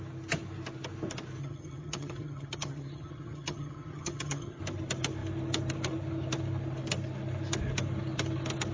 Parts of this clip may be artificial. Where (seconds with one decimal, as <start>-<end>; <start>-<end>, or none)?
1.4-4.6